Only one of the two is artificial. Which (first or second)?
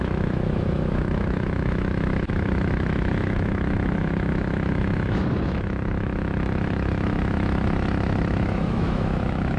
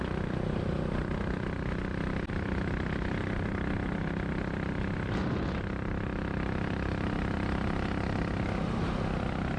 first